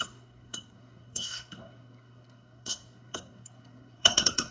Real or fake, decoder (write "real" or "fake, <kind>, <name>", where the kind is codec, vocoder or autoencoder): fake, codec, SNAC